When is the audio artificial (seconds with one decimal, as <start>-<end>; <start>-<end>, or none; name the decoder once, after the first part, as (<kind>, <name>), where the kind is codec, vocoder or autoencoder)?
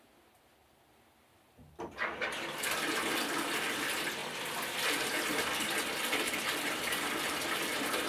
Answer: 0.0-8.1 (vocoder, BigVGAN v2)